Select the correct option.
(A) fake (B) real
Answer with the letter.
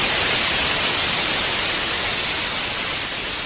B